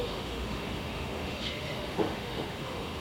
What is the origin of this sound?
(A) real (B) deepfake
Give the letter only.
B